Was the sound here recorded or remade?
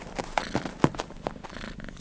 recorded